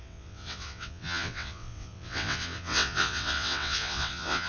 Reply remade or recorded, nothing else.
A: remade